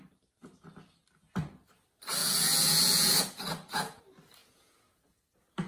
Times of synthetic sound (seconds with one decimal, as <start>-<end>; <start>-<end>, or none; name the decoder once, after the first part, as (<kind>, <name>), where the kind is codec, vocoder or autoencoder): 2.2-4.0 (vocoder, Vocos); 4.4-5.7